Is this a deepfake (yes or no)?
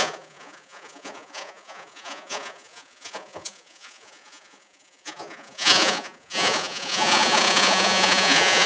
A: yes